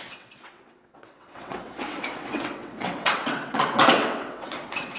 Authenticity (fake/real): fake